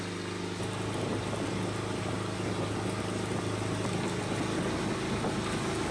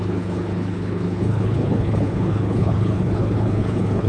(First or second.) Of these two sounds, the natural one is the first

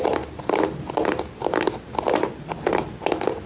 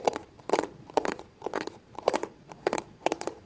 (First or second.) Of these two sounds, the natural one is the first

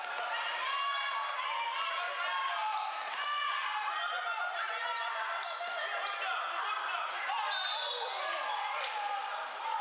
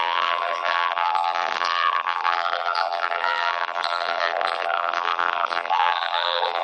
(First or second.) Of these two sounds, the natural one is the first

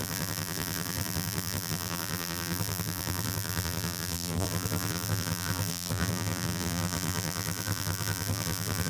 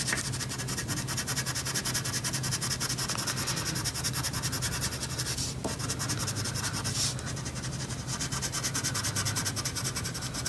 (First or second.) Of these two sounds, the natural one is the second